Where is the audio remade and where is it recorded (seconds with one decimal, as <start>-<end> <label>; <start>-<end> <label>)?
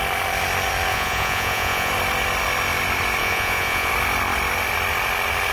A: 0.0-0.9 recorded; 0.9-1.9 remade; 1.9-3.2 recorded; 3.2-3.9 remade; 3.9-5.5 recorded